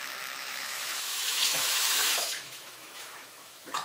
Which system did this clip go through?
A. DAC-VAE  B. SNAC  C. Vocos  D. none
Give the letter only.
A